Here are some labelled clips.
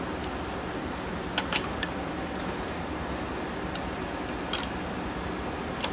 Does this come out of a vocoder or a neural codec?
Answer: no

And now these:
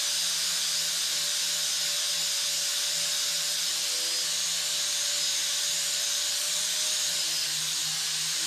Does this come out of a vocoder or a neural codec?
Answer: no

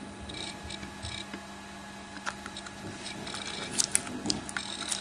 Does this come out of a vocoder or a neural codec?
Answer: no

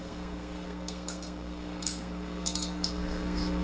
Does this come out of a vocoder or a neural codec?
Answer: yes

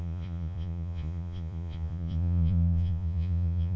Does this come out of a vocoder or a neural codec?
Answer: yes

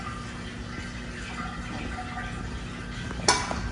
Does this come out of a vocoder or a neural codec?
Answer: no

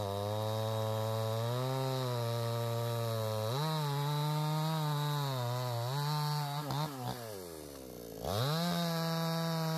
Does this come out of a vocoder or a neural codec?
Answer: no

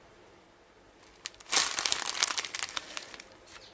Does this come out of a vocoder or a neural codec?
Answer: no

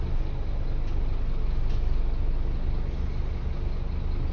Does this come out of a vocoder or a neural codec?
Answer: no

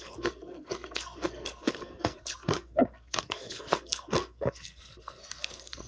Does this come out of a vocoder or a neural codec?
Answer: yes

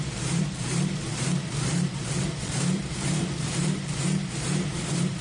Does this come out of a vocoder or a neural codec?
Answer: yes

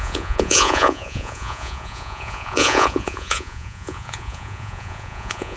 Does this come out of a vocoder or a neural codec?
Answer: yes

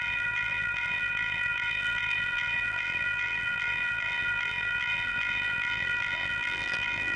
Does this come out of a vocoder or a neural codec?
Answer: yes